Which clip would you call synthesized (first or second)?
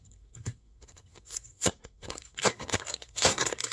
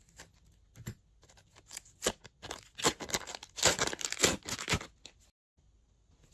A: first